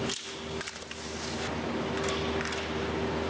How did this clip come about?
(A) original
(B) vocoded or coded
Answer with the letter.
A